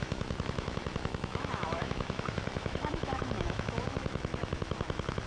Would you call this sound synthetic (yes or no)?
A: yes